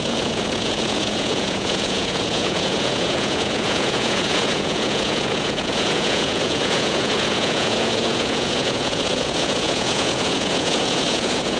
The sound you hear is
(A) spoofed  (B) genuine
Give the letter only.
A